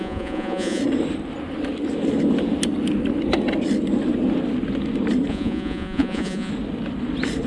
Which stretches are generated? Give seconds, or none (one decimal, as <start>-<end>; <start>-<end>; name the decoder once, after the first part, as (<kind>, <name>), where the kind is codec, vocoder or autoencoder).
0.0-0.8 (vocoder, Vocos); 5.3-6.5